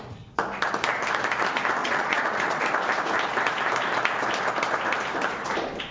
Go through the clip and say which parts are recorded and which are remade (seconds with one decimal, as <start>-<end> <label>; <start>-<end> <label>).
0.0-1.8 recorded; 1.8-2.6 remade; 2.6-5.9 recorded